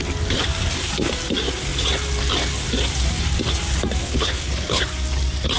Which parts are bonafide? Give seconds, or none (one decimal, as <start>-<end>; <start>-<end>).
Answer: 0.0-4.0; 4.8-5.6